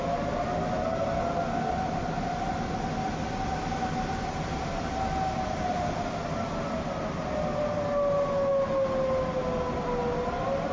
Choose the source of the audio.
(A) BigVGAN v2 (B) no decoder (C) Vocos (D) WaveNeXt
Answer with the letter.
B